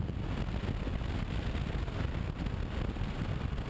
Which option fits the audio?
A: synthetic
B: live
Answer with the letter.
B